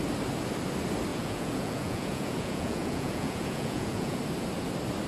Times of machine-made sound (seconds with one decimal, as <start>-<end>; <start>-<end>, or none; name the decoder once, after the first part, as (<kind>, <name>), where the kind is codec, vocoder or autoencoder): 1.1-4.2 (vocoder, Vocos)